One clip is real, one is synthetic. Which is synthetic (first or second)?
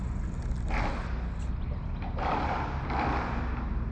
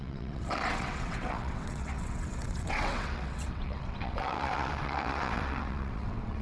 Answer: second